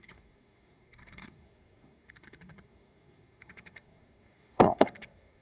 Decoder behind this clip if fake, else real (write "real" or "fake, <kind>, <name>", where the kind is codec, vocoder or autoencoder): fake, codec, SNAC